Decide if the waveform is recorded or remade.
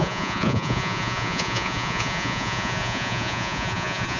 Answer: remade